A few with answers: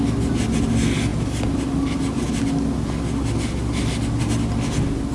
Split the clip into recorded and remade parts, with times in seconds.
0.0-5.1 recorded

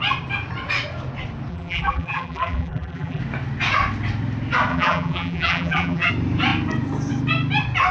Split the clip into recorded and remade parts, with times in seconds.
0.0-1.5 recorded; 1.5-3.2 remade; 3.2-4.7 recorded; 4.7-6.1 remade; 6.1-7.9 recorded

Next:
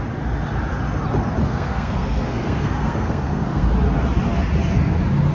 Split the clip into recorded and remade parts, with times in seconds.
0.0-1.4 recorded; 1.4-3.7 remade; 3.7-5.3 recorded

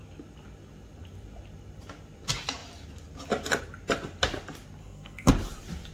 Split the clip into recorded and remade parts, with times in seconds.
0.0-4.8 recorded; 4.8-5.3 remade; 5.3-5.9 recorded

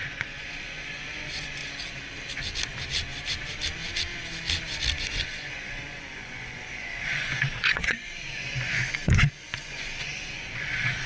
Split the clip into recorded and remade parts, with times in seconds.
0.0-1.6 remade; 1.6-5.0 recorded; 5.0-11.1 remade